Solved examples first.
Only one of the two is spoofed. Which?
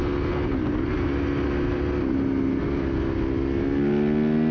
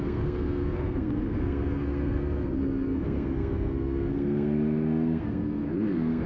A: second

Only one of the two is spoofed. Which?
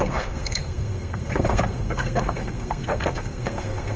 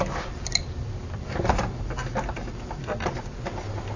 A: first